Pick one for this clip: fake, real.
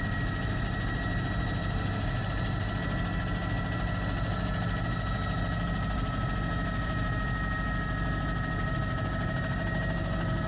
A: real